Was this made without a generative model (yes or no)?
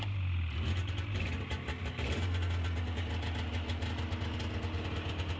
yes